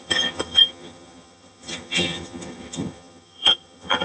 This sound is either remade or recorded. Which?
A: remade